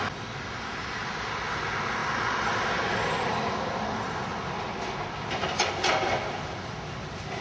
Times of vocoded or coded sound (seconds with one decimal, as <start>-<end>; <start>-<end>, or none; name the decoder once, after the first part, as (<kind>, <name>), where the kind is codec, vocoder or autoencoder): none